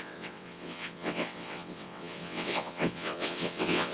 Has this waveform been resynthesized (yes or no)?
yes